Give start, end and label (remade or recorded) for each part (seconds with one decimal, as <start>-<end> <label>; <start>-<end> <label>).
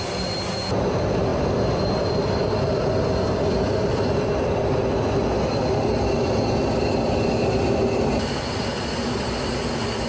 0.0-10.1 recorded